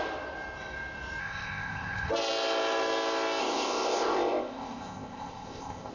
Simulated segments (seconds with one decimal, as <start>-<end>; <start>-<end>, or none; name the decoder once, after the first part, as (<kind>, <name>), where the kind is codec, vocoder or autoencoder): 1.2-2.1 (codec, ZipCodec); 3.4-5.9